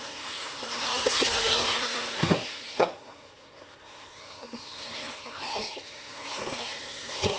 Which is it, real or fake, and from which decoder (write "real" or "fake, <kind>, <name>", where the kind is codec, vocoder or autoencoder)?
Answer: fake, codec, SNAC